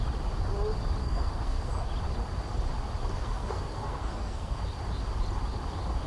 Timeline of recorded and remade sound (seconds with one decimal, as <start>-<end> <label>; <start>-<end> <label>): 0.0-1.0 recorded; 1.0-1.9 remade; 1.9-3.2 recorded; 3.2-4.6 remade; 4.6-6.1 recorded